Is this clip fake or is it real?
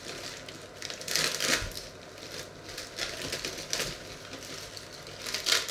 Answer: real